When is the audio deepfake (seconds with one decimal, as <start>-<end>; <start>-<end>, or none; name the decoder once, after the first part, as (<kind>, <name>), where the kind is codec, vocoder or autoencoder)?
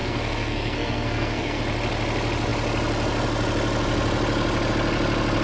0.0-1.6 (codec, SNAC)